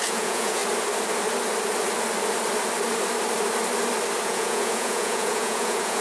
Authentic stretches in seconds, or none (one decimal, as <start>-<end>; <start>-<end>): 0.6-4.2